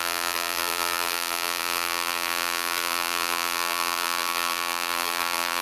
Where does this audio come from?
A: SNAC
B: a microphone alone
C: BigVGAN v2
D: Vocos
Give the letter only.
C